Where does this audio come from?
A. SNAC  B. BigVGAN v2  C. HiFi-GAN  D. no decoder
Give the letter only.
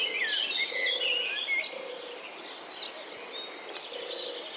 D